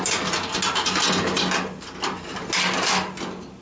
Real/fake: real